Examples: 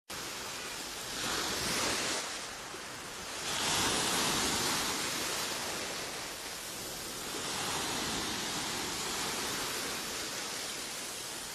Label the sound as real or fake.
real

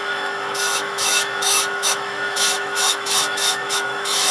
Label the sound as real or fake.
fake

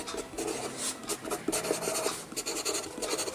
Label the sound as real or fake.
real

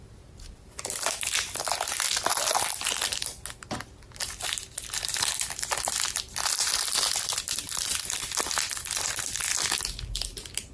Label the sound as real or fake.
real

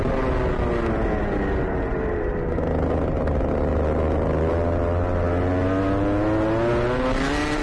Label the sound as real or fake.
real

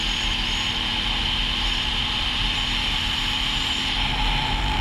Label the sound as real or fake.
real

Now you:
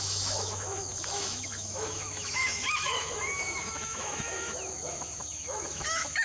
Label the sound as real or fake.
fake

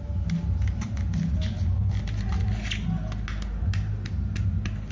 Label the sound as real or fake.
real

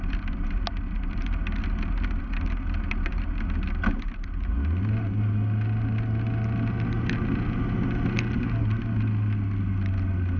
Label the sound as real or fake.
real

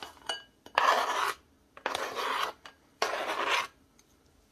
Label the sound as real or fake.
real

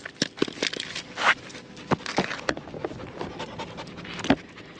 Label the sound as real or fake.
real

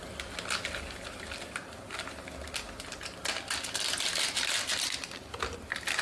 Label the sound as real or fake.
real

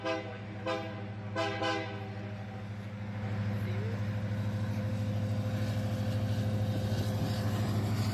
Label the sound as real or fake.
real